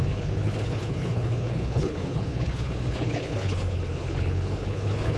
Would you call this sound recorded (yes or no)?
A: no